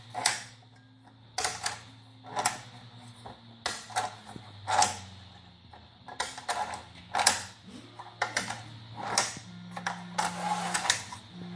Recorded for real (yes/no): yes